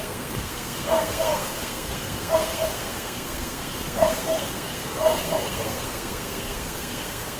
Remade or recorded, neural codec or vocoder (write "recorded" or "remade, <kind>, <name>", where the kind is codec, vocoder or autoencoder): remade, codec, SNAC